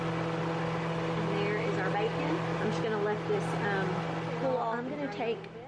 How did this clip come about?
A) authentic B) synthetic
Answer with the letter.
A